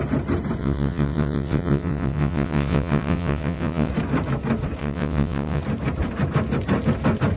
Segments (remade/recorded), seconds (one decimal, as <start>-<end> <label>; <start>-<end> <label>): 0.0-0.6 recorded; 0.6-3.9 remade; 3.9-4.8 recorded; 4.8-5.6 remade; 5.6-7.4 recorded